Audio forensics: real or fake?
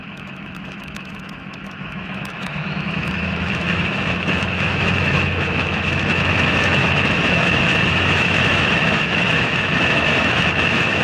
fake